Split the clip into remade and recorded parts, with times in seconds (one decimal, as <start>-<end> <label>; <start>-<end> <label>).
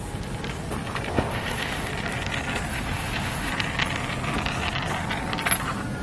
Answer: 0.0-1.3 recorded; 1.3-1.9 remade; 1.9-2.7 recorded; 2.7-3.5 remade; 3.5-6.0 recorded